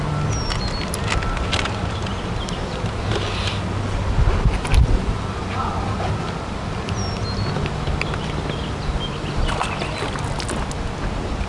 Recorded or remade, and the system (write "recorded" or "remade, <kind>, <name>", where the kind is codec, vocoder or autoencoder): recorded